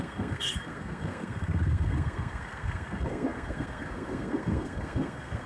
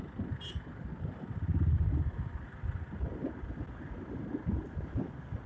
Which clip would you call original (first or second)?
second